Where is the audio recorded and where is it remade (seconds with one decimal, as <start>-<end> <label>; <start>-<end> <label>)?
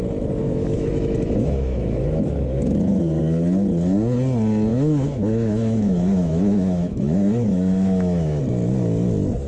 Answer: 0.0-0.4 recorded; 0.4-3.2 remade; 3.2-4.7 recorded; 4.7-8.4 remade; 8.4-9.5 recorded